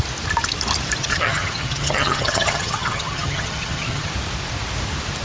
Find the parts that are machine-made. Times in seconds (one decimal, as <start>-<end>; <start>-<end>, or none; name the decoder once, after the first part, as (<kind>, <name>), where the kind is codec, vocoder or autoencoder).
1.0-4.1 (vocoder, HiFi-GAN)

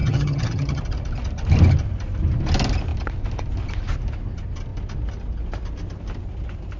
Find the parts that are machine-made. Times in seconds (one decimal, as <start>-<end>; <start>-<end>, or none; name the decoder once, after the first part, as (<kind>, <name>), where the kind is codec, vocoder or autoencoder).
0.0-0.8 (vocoder, HiFi-GAN)

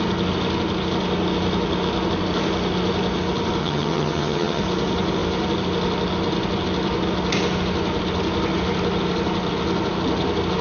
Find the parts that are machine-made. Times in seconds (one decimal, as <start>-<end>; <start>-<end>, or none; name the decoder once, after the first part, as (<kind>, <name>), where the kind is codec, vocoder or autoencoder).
3.6-4.6 (vocoder, HiFi-GAN)